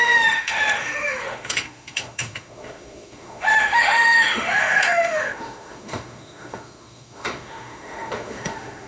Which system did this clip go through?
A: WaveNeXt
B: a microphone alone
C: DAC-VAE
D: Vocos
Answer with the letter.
C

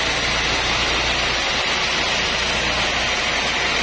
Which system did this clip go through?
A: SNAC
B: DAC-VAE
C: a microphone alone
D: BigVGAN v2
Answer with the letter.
C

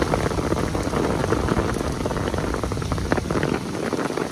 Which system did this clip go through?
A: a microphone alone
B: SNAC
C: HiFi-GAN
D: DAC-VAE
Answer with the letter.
A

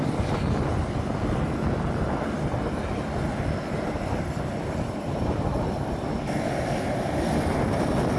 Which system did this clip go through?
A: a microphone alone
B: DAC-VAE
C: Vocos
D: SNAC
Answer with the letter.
A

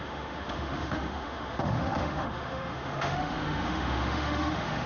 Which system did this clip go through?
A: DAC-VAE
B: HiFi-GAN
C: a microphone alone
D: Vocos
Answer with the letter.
A